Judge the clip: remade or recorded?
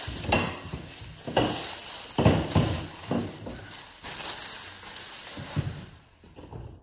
recorded